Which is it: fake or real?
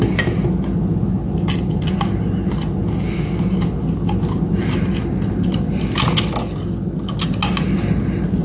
real